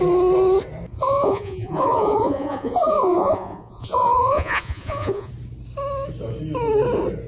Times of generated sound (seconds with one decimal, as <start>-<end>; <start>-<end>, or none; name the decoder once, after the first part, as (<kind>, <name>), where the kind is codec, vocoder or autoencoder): 0.9-5.3 (vocoder, Vocos)